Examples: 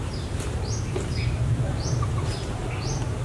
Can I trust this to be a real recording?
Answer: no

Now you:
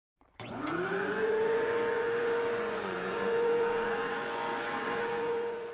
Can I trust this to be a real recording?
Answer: no